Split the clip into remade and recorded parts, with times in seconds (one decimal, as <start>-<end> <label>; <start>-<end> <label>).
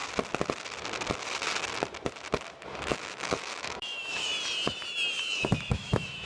0.0-2.9 recorded; 2.9-4.3 remade; 4.3-5.2 recorded; 5.2-6.3 remade